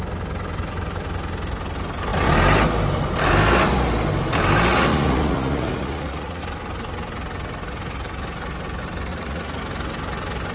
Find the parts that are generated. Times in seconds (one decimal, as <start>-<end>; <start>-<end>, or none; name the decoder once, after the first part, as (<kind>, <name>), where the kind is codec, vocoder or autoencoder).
4.9-6.4 (vocoder, Vocos); 9.1-9.6